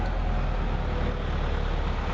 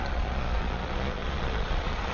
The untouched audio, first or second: first